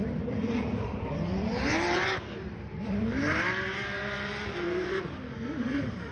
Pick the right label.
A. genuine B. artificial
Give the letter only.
B